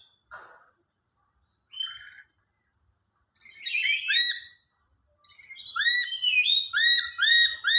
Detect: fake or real real